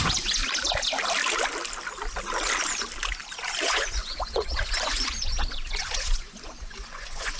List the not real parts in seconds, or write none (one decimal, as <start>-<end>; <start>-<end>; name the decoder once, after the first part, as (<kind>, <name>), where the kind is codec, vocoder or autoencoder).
0.0-0.4 (vocoder, Vocos); 3.6-7.4

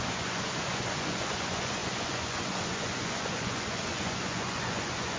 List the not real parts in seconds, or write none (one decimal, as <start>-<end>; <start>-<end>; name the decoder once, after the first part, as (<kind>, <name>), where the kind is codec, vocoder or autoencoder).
0.0-5.2 (vocoder, Vocos)

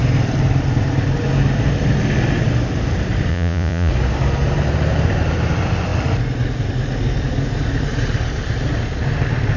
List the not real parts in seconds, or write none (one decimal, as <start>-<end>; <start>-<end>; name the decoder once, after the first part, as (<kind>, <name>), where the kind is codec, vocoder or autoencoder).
3.3-3.9 (vocoder, Vocos)

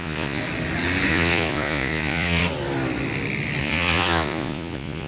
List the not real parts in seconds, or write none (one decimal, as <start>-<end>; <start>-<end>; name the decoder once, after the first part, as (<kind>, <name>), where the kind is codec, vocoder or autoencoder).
0.0-0.4 (vocoder, Vocos); 1.1-2.4; 3.6-5.1